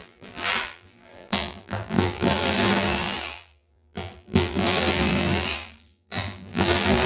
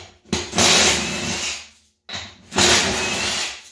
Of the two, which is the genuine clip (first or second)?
second